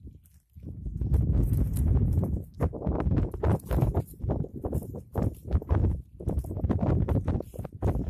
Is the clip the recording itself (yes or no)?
yes